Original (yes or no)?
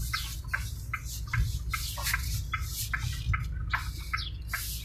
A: yes